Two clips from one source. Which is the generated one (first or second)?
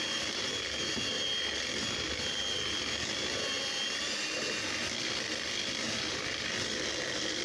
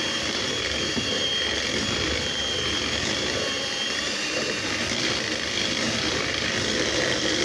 second